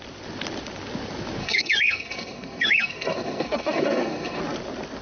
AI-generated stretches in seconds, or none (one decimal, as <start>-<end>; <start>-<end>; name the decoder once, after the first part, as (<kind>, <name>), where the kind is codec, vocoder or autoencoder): 1.4-4.4 (codec, SNAC)